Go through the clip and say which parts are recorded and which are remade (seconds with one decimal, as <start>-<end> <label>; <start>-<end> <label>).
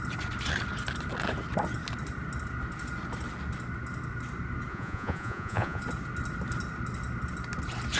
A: 0.0-4.7 recorded; 4.7-5.8 remade; 5.8-8.0 recorded